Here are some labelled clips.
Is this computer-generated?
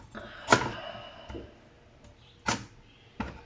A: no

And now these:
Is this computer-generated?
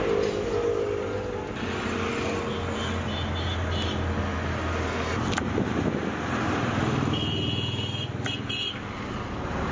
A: no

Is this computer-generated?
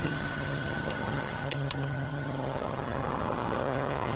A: yes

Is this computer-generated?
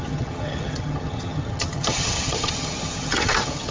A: yes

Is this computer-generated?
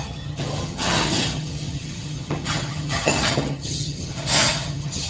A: yes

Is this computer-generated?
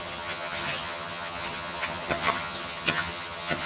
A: yes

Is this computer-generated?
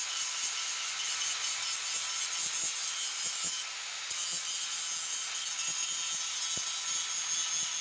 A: no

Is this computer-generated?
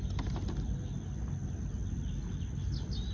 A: no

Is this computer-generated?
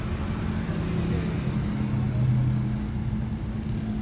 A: no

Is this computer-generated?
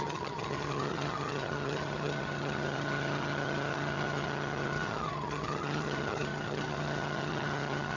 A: yes